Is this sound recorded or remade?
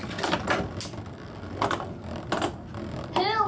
recorded